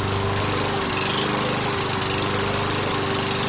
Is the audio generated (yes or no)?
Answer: no